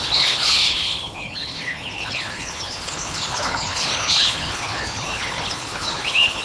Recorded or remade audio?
remade